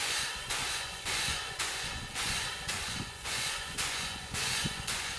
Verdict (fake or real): fake